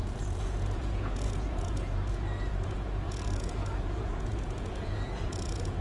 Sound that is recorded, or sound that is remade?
remade